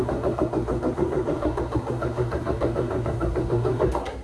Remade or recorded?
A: remade